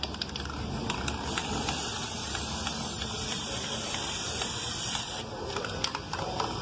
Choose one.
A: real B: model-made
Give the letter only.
B